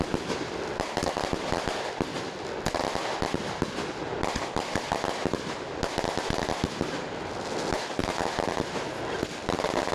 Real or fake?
real